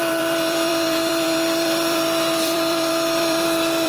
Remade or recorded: remade